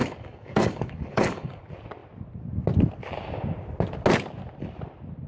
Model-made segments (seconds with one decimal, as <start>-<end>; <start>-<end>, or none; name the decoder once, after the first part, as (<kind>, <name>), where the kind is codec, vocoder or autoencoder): 0.0-1.6 (codec, DAC)